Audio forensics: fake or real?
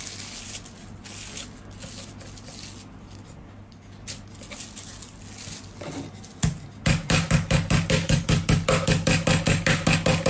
real